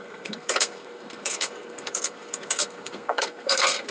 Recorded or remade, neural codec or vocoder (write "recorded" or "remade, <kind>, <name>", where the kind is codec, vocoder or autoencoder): remade, codec, SNAC